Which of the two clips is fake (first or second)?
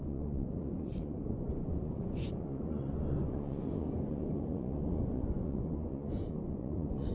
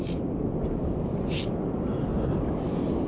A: first